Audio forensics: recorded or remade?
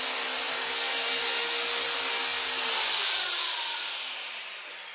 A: recorded